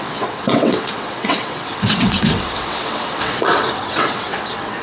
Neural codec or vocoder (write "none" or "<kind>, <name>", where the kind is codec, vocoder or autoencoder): vocoder, WaveNeXt